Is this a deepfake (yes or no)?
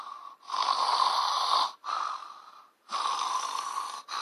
no